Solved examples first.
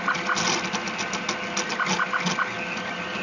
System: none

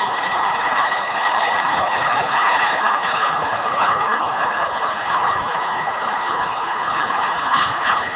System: codec, HILCodec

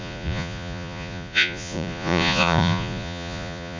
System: vocoder, Vocos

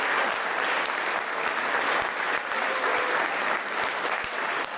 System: none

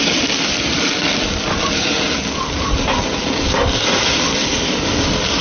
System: none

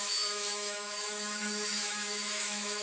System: autoencoder, DAC-VAE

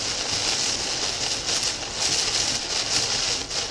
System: none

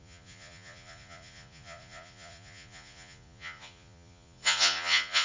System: vocoder, Vocos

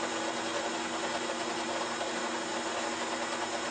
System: none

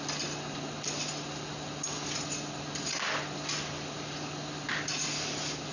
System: none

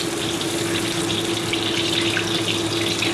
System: none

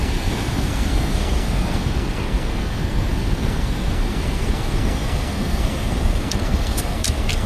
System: codec, SNAC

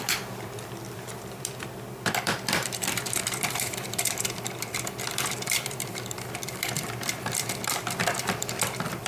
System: vocoder, BigVGAN v2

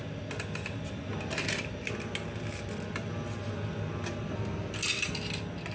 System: none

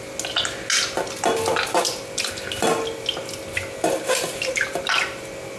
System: none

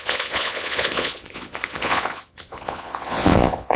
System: vocoder, Vocos